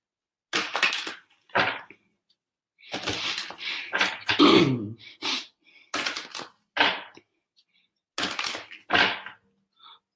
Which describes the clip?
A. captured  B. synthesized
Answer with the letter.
A